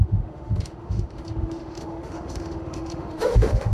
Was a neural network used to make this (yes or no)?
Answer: yes